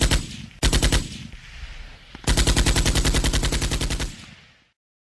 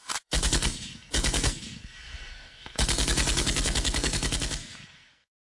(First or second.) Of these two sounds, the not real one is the second